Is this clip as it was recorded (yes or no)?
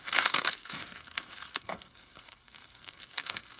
no